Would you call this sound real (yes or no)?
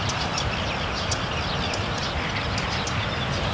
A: yes